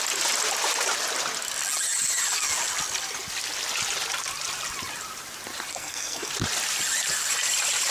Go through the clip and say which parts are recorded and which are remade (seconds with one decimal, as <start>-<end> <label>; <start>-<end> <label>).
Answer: 0.0-5.7 recorded; 5.7-6.3 remade; 6.3-7.9 recorded